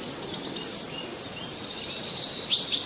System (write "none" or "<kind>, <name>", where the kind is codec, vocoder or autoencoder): none